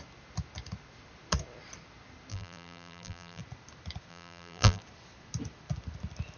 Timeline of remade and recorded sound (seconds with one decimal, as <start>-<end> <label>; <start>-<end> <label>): 0.0-2.3 recorded; 2.3-3.4 remade; 3.4-4.1 recorded; 4.1-4.8 remade; 4.8-6.4 recorded